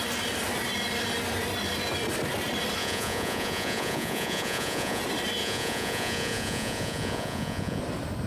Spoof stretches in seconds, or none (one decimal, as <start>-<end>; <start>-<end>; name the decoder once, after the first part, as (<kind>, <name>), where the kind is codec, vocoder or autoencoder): 2.8-5.0 (vocoder, Vocos); 5.4-7.8